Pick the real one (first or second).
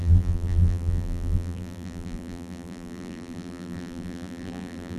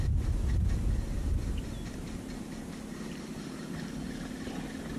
second